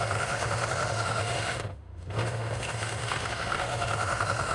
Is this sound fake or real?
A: fake